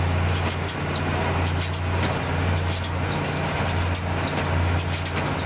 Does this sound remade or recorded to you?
recorded